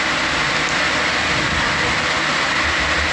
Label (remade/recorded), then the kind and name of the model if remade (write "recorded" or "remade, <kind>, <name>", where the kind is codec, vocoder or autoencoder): remade, vocoder, BigVGAN v2